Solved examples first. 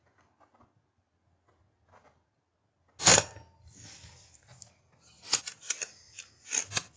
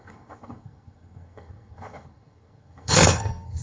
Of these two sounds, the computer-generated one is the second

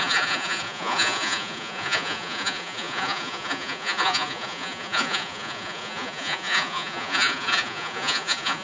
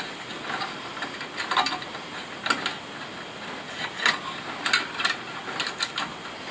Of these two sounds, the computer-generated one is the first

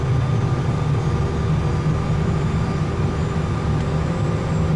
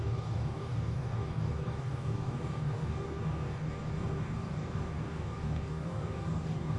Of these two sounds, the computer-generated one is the second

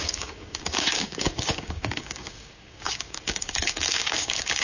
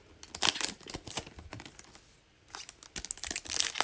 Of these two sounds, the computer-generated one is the first